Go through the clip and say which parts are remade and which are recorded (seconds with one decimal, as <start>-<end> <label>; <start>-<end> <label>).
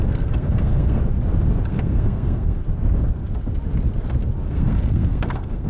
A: 0.0-1.0 remade; 1.0-1.7 recorded; 1.7-2.6 remade; 2.6-4.5 recorded; 4.5-5.7 remade